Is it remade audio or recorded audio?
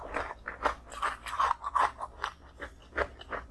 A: recorded